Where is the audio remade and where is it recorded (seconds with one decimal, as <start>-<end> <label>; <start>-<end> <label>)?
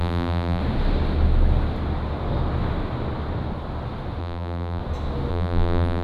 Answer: 0.0-0.6 remade; 0.6-4.2 recorded; 4.2-4.8 remade; 4.8-5.3 recorded; 5.3-6.0 remade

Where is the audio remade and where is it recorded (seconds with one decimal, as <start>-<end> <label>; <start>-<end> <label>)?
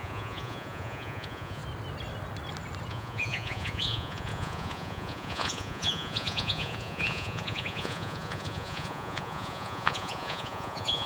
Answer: 0.0-1.6 remade; 1.6-2.9 recorded; 2.9-11.1 remade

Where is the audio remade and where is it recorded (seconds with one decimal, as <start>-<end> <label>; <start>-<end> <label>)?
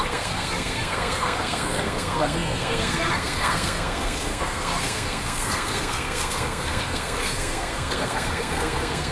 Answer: 0.0-9.1 remade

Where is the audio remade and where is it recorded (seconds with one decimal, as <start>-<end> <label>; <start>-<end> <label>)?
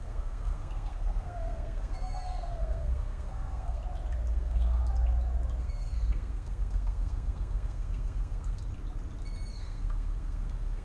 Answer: 0.0-3.8 remade; 3.8-4.3 recorded; 4.3-4.8 remade; 4.8-5.6 recorded; 5.6-8.6 remade; 8.6-9.5 recorded; 9.5-10.8 remade